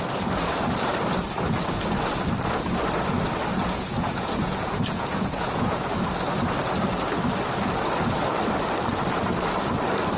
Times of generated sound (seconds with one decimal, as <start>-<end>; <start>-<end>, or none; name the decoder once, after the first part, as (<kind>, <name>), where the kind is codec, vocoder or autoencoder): 3.5-5.9 (vocoder, Vocos)